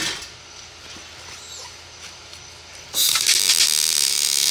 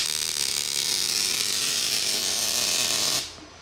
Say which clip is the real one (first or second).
first